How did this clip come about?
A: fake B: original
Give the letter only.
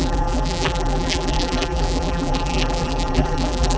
A